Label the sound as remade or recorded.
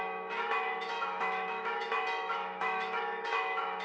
remade